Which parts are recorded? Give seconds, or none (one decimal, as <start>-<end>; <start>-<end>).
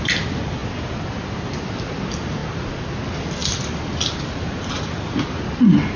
0.0-6.0